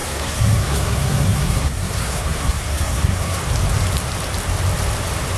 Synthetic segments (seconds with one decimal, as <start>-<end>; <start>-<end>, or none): 0.0-3.4